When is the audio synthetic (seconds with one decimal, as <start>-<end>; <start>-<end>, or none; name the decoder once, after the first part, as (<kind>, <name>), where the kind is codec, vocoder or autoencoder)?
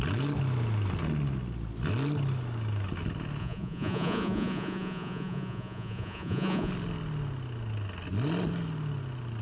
3.4-6.7 (vocoder, Vocos)